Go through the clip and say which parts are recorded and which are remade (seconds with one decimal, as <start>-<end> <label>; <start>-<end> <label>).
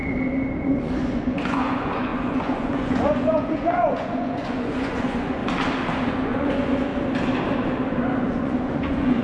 0.0-0.6 recorded; 0.6-5.4 remade; 5.4-6.1 recorded; 6.1-6.9 remade; 6.9-8.2 recorded; 8.2-9.2 remade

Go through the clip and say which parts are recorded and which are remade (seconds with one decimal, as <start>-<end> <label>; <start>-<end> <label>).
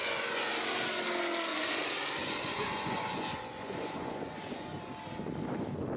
0.0-0.6 remade; 0.6-1.5 recorded; 1.5-4.9 remade; 4.9-6.0 recorded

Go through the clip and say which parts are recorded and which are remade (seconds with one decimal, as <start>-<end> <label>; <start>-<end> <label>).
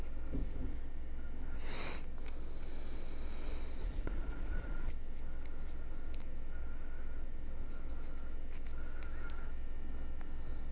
0.0-3.8 recorded; 3.8-4.9 remade; 4.9-10.7 recorded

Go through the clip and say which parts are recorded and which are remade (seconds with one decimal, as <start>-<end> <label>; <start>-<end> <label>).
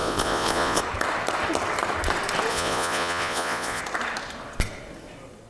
0.0-0.8 remade; 0.8-2.5 recorded; 2.5-3.8 remade; 3.8-5.5 recorded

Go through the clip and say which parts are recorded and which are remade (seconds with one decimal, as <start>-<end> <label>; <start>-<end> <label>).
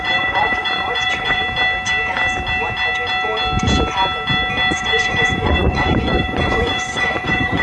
0.0-1.4 remade; 1.4-4.7 recorded; 4.7-7.6 remade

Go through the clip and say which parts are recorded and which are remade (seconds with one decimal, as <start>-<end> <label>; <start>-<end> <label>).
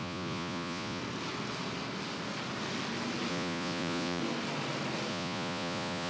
0.0-1.0 remade; 1.0-3.3 recorded; 3.3-4.2 remade; 4.2-5.1 recorded; 5.1-6.1 remade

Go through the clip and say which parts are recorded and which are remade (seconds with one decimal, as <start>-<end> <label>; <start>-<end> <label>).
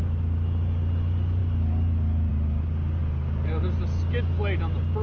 0.0-5.0 recorded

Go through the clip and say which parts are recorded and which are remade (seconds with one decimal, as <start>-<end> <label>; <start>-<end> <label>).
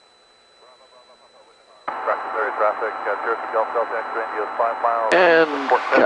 0.0-1.4 recorded; 1.4-2.6 remade; 2.6-6.1 recorded